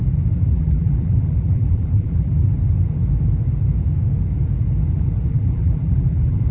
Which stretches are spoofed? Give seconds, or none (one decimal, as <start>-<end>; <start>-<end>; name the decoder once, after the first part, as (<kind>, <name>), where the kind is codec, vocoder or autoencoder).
0.5-2.5 (vocoder, BigVGAN v2); 5.3-6.5